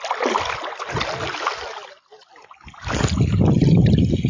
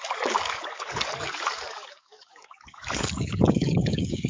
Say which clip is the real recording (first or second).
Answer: first